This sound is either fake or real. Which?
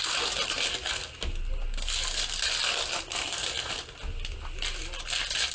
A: real